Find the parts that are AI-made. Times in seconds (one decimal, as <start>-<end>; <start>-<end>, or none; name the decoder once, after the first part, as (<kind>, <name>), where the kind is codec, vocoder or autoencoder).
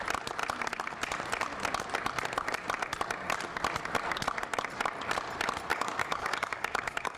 5.7-7.2 (codec, DAC)